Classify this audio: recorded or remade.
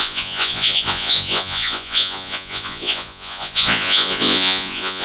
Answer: remade